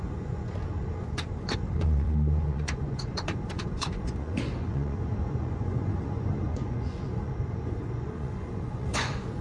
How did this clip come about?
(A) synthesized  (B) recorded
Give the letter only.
A